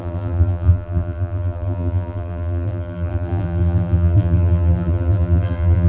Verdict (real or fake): fake